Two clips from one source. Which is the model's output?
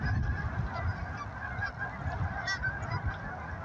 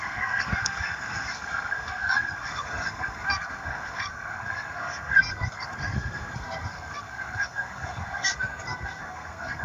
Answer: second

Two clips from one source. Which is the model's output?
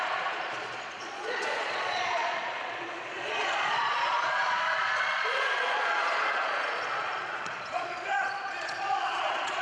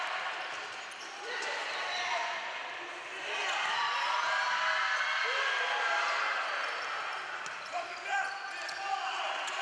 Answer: first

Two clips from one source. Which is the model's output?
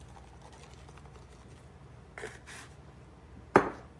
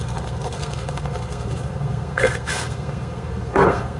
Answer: second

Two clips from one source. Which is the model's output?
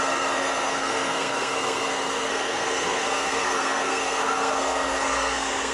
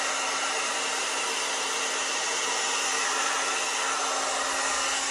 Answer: first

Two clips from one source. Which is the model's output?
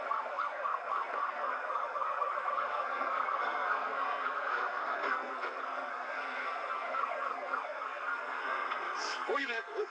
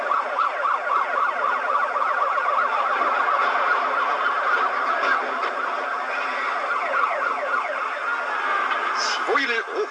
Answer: first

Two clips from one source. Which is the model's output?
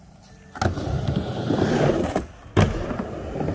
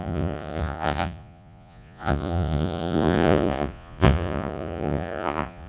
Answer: second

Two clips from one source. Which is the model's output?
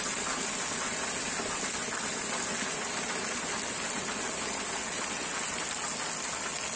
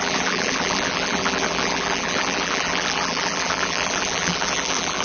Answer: second